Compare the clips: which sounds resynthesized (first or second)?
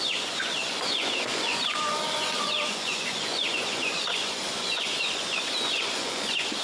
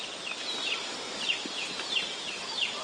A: first